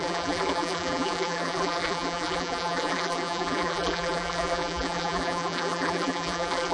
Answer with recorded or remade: remade